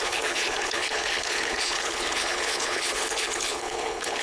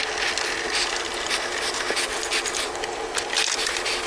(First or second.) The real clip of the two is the second